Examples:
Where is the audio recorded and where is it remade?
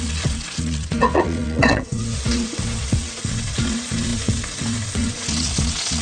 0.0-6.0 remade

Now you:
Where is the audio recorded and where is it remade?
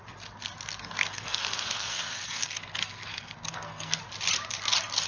0.0-1.0 recorded; 1.0-4.0 remade; 4.0-5.1 recorded